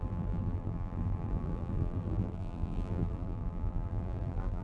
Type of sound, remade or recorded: remade